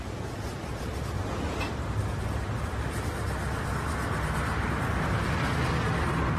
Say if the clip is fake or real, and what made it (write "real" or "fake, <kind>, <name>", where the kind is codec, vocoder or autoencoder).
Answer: real